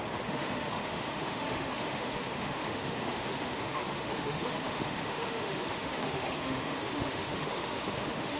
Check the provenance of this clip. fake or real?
fake